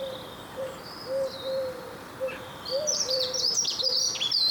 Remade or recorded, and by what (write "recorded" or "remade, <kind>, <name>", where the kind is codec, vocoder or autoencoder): remade, vocoder, BigVGAN v2